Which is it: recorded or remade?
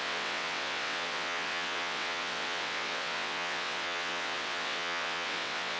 remade